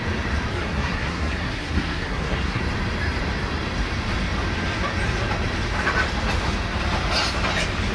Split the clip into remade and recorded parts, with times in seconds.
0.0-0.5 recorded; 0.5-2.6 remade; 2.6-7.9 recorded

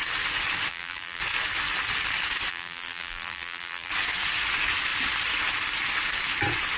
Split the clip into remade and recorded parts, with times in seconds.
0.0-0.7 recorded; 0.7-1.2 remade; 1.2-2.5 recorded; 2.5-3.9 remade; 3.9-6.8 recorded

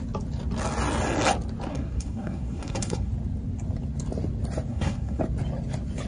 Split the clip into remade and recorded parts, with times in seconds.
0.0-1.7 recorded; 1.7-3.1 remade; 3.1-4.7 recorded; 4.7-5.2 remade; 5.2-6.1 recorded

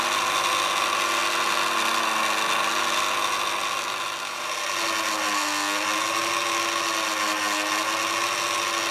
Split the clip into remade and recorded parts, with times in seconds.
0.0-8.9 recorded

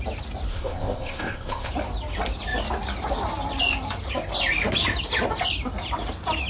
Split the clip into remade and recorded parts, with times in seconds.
0.0-0.5 recorded; 0.5-1.7 remade; 1.7-6.5 recorded

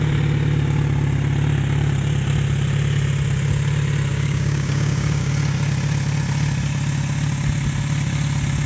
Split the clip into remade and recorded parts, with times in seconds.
0.0-4.1 recorded; 4.1-5.3 remade; 5.3-8.7 recorded